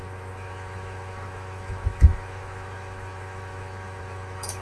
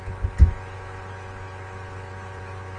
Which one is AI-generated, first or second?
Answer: first